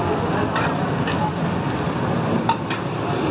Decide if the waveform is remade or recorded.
recorded